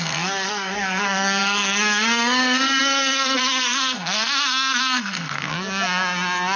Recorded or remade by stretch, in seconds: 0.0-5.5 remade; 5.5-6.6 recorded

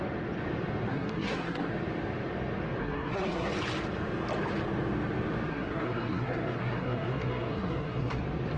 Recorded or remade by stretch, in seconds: 0.0-0.9 recorded; 0.9-1.7 remade; 1.7-2.8 recorded; 2.8-3.5 remade; 3.5-5.5 recorded; 5.5-8.2 remade; 8.2-8.6 recorded

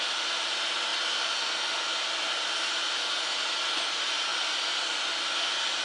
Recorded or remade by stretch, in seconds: 0.0-5.8 recorded

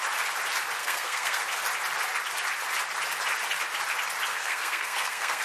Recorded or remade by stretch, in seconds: 0.0-0.8 recorded; 0.8-1.4 remade; 1.4-4.3 recorded; 4.3-5.4 remade

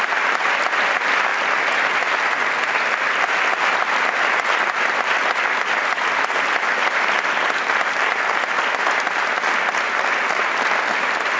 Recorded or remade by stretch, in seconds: 0.0-11.4 recorded

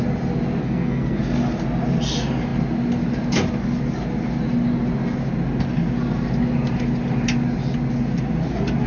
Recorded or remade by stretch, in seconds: 0.0-0.6 recorded; 0.6-1.2 remade; 1.2-8.9 recorded

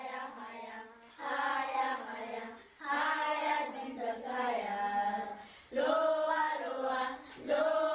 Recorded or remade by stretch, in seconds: 0.0-7.9 recorded

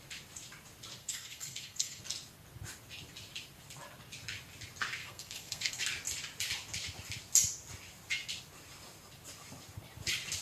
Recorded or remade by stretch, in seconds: 0.0-1.0 recorded; 1.0-2.0 remade; 2.0-5.0 recorded; 5.0-5.8 remade; 5.8-10.4 recorded